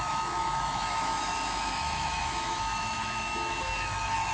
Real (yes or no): no